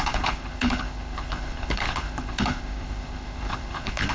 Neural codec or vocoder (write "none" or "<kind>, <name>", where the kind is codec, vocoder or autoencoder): codec, HILCodec